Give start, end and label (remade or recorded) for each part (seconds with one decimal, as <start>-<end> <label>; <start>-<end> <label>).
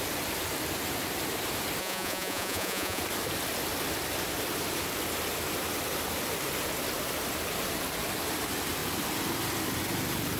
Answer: 0.0-1.8 recorded; 1.8-3.0 remade; 3.0-10.4 recorded